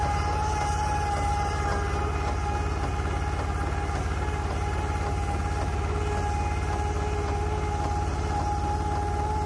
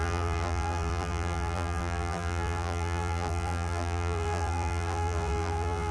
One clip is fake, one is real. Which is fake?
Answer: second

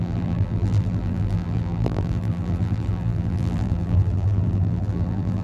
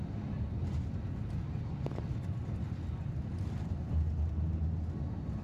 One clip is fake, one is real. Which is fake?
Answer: first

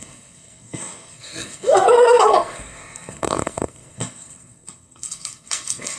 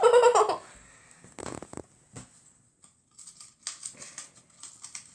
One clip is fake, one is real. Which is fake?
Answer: first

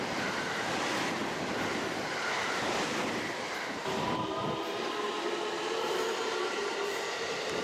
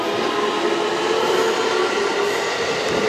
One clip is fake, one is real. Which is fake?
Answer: first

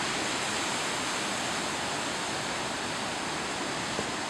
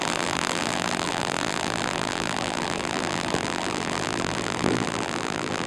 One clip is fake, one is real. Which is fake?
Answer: second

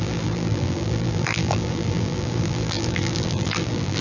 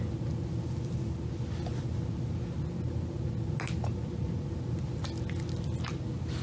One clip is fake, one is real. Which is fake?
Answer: first